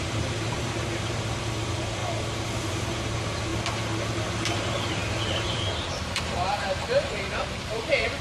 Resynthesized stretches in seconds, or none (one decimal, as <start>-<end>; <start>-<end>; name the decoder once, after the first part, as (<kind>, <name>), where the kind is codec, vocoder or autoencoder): 0.0-2.0 (vocoder, BigVGAN v2); 2.6-3.5; 4.3-8.2